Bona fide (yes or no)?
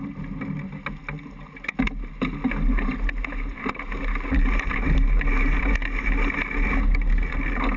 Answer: yes